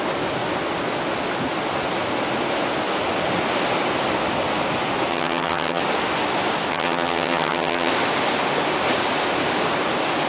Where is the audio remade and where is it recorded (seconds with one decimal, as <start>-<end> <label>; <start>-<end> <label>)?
0.0-5.1 recorded; 5.1-5.8 remade; 5.8-6.7 recorded; 6.7-7.9 remade; 7.9-10.3 recorded